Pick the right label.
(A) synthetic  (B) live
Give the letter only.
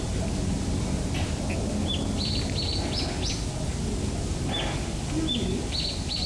B